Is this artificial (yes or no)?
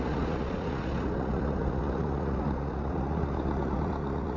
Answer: yes